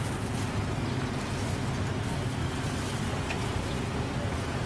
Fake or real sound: real